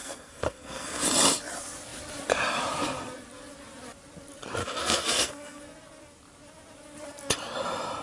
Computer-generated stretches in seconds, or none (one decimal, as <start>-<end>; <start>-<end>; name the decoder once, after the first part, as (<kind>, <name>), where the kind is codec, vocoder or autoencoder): 0.0-1.0 (codec, SNAC); 4.6-5.6